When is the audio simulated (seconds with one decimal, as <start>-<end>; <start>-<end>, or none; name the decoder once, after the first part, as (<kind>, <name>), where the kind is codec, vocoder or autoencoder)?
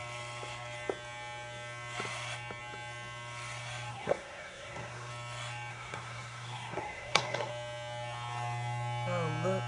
3.9-5.1 (codec, SNAC); 5.7-7.5